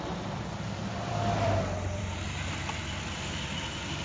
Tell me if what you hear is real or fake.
fake